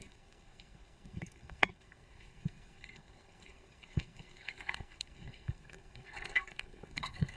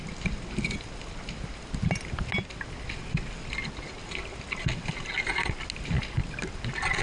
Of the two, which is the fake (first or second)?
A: first